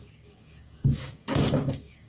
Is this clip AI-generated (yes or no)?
yes